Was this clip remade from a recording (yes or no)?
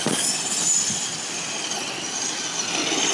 no